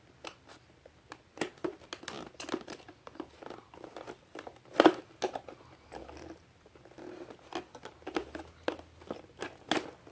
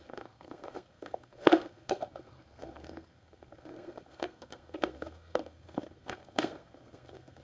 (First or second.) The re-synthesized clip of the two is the second